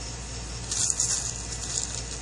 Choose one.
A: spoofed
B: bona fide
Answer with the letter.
B